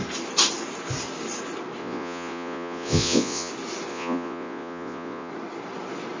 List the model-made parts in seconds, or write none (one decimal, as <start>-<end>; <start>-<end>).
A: 1.8-3.5; 3.9-5.3